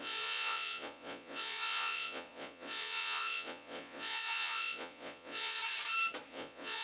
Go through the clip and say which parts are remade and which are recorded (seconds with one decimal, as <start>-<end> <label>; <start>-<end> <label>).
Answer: 0.0-5.6 remade; 5.6-6.3 recorded; 6.3-6.8 remade